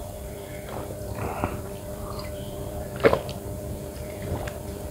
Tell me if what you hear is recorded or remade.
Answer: remade